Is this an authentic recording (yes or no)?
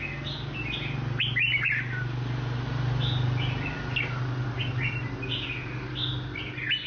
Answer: yes